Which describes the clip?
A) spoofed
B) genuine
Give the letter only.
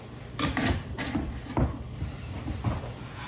B